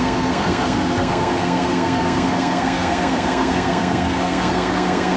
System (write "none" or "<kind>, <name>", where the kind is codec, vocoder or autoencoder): codec, SNAC